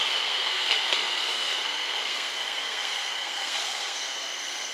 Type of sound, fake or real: fake